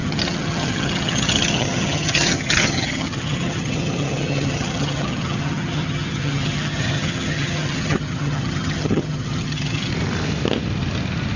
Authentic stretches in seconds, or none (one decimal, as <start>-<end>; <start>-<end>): 9.9-11.4